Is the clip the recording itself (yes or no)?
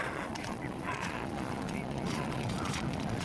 no